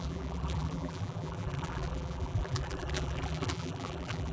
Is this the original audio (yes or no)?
no